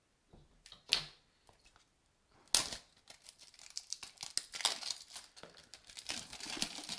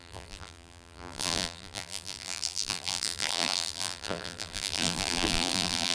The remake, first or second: second